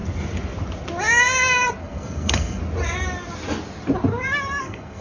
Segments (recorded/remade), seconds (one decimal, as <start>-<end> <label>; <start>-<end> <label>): 0.0-1.8 recorded; 1.8-2.6 remade; 2.6-4.6 recorded; 4.6-5.0 remade